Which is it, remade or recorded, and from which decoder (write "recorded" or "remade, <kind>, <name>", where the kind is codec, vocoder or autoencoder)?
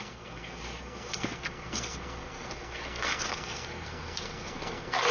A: remade, codec, SNAC